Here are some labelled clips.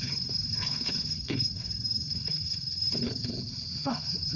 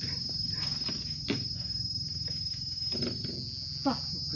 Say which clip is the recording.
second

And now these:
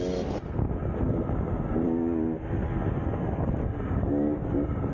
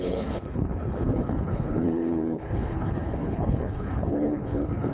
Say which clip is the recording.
first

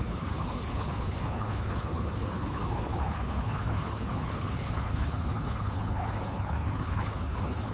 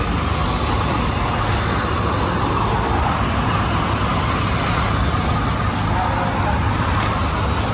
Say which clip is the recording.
second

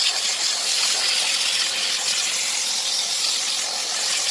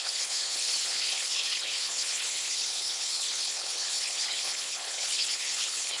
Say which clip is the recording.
first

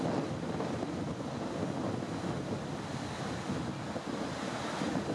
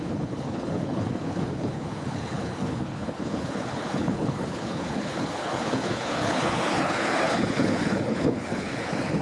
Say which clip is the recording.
first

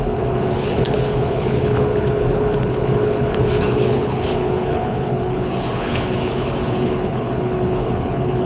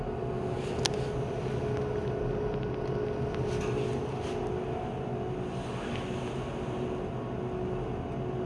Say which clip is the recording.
second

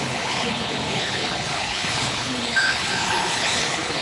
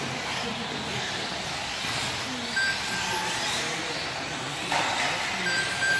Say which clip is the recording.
second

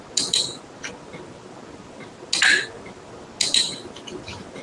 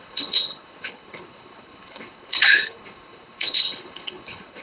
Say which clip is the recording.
first